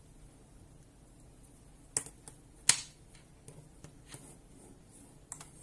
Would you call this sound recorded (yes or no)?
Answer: yes